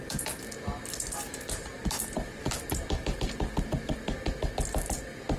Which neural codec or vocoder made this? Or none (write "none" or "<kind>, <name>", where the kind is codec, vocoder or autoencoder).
none